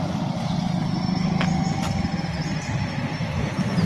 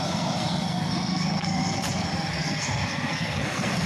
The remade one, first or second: second